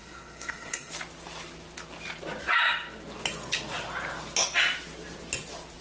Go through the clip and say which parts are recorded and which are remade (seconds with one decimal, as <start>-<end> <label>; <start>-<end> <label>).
0.0-0.9 remade; 0.9-5.8 recorded